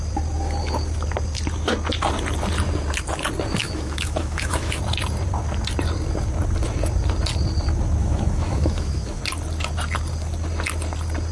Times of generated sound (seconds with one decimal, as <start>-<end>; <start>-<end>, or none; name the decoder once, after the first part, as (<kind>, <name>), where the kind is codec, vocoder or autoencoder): 3.6-4.8 (autoencoder, DAC-VAE); 8.0-9.2